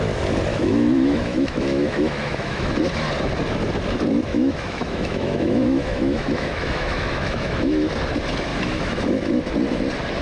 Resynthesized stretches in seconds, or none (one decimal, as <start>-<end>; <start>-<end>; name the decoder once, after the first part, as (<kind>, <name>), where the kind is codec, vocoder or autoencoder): 0.5-2.8 (autoencoder, DAC-VAE); 4.3-7.9; 8.5-9.4